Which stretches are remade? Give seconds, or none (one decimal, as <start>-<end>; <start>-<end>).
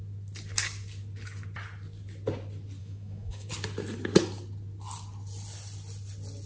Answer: 2.8-3.5